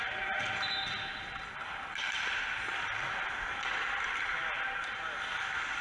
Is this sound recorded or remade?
recorded